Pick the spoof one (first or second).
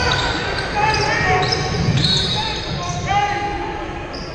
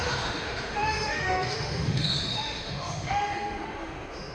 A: second